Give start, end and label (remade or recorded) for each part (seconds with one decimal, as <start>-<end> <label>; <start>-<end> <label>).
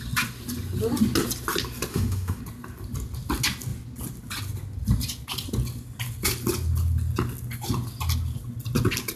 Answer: 0.0-1.9 recorded; 1.9-2.4 remade; 2.4-9.2 recorded